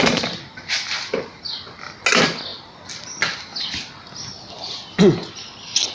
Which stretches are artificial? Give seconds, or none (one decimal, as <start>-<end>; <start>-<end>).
none

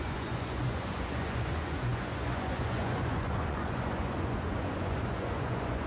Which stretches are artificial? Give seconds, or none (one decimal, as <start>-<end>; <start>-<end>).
0.0-5.9

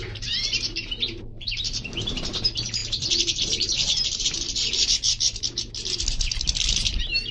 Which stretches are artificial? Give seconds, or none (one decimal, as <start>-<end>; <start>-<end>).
0.0-7.3